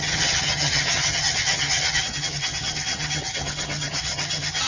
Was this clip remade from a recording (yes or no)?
yes